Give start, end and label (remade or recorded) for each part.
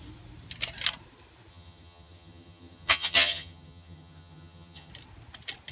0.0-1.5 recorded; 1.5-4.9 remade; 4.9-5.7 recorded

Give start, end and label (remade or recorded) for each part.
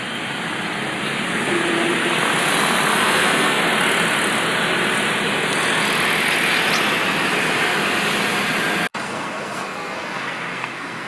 0.0-2.9 recorded; 2.9-3.6 remade; 3.6-8.9 recorded; 8.9-11.1 remade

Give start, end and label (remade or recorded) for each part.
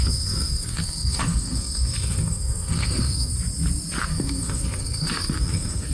0.0-3.3 remade; 3.3-4.1 recorded; 4.1-5.9 remade